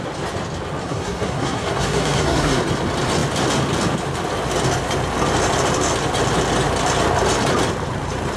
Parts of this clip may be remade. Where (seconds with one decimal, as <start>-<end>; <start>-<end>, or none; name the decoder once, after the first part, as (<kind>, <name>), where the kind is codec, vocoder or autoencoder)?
0.8-2.6 (codec, SNAC)